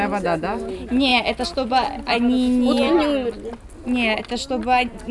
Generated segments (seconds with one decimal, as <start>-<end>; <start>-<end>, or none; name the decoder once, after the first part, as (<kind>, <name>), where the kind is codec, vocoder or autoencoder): none